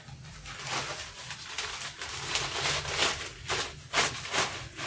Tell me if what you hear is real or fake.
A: real